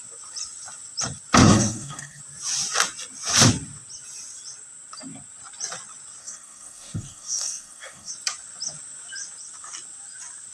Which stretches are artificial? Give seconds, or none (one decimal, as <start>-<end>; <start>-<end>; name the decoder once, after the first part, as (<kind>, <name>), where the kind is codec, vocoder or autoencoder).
1.4-2.2 (codec, SNAC); 6.2-8.1